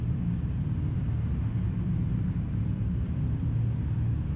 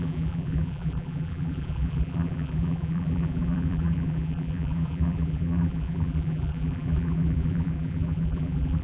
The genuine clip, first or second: first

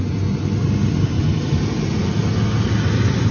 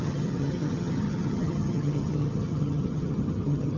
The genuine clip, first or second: first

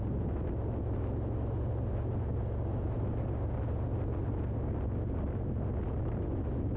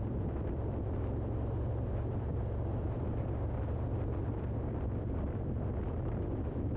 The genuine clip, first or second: first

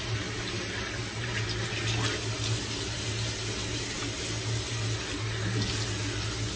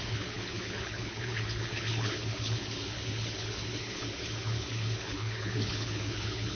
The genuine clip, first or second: first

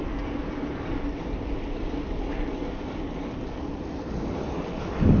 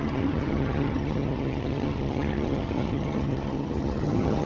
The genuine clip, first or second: first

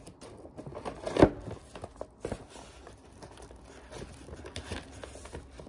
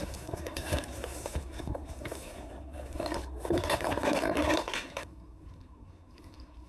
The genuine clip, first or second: first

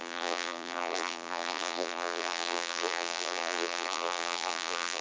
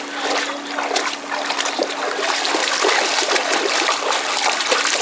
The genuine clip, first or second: second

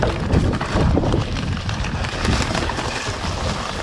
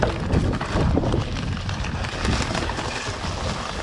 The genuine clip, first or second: second